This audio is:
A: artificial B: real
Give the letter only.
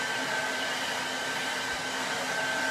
B